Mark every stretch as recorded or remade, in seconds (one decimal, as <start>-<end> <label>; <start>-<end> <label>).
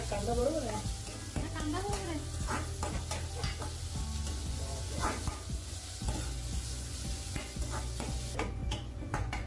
0.0-0.4 remade; 0.4-4.3 recorded; 4.3-9.5 remade